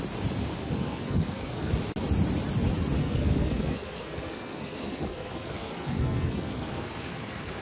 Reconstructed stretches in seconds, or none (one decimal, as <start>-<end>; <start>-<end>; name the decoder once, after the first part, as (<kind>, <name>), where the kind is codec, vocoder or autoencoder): 0.6-1.7 (codec, SNAC); 3.0-7.6